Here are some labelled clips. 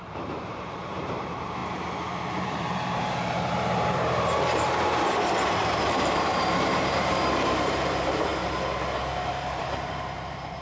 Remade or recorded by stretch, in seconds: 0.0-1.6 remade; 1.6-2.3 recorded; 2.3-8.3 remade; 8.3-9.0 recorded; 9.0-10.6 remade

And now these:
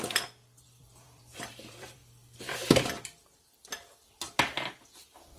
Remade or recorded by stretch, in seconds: 0.0-0.6 recorded; 0.6-2.0 remade; 2.0-5.4 recorded